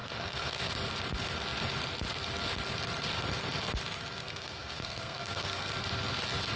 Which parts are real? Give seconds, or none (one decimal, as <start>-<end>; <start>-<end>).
0.7-4.2; 5.7-6.6